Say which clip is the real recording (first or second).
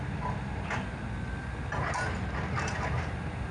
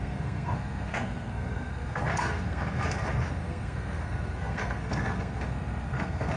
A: first